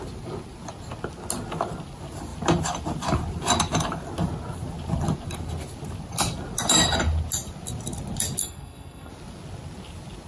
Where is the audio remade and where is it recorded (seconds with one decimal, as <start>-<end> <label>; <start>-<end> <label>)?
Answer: 0.0-8.4 recorded; 8.4-9.1 remade; 9.1-10.3 recorded